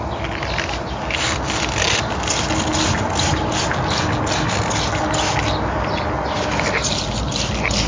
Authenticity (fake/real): real